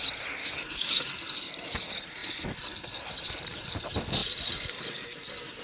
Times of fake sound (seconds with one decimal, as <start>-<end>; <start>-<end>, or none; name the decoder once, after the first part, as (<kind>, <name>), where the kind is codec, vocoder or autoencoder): 0.4-1.1 (codec, DAC)